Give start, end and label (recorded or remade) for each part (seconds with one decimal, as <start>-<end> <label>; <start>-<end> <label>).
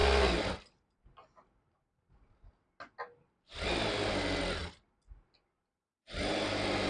0.0-6.9 recorded